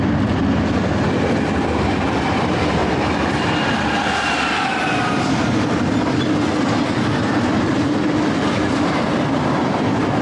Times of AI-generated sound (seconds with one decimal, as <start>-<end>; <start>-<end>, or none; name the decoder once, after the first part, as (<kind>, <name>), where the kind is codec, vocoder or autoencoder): none